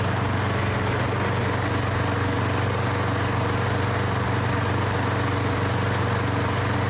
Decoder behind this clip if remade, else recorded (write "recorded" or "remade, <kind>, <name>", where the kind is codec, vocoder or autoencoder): recorded